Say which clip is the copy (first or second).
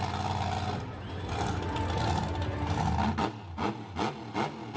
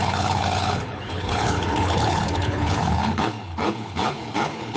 second